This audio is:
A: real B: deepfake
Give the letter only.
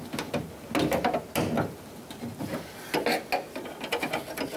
A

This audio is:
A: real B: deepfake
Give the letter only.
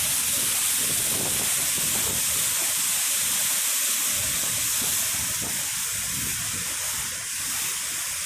A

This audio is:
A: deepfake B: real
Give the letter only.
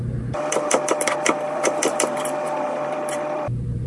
A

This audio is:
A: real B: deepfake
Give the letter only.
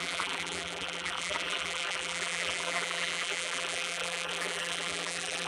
B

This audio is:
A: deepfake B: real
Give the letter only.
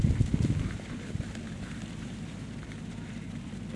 A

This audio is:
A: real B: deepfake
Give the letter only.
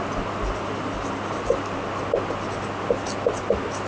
A